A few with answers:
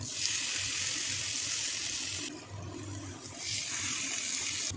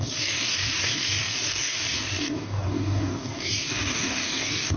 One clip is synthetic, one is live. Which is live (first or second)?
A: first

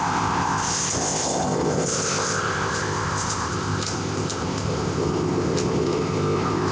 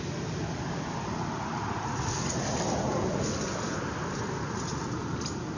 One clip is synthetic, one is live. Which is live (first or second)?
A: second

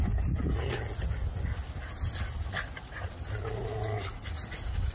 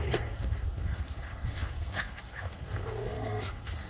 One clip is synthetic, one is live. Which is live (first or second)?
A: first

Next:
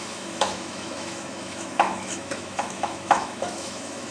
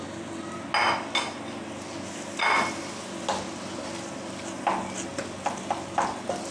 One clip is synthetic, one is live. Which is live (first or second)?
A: second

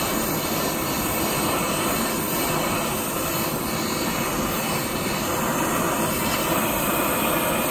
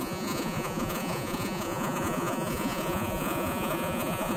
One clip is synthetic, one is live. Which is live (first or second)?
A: first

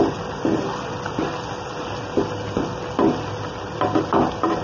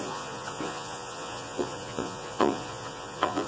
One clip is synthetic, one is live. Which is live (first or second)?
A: first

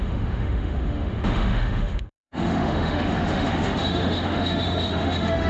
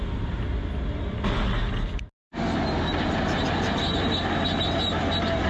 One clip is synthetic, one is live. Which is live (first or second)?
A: second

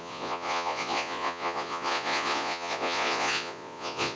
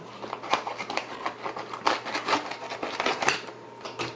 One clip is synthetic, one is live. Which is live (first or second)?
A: second